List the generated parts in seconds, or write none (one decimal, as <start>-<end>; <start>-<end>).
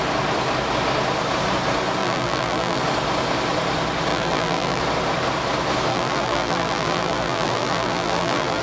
2.0-2.8; 4.1-4.8; 5.9-8.6